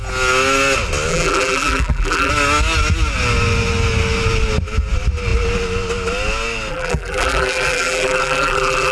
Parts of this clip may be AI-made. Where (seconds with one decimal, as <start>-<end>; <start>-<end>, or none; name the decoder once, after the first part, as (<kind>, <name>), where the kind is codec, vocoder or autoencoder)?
1.1-2.3 (vocoder, BigVGAN v2); 6.7-8.9